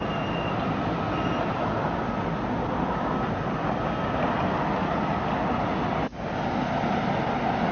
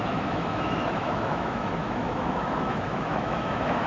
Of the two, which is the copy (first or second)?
second